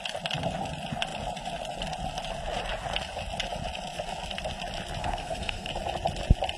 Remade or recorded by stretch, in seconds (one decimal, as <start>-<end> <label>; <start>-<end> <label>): 0.0-5.0 recorded; 5.0-5.7 remade; 5.7-6.6 recorded